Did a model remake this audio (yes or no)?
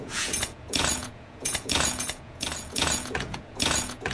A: yes